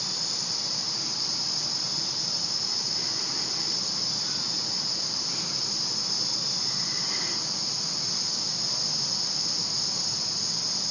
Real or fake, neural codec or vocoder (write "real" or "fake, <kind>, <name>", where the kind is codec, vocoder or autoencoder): real